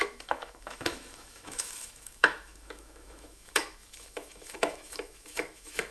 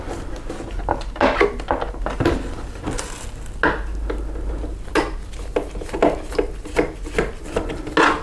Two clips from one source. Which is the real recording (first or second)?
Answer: second